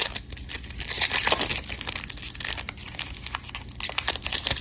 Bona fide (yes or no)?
yes